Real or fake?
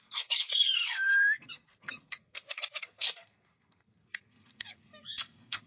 fake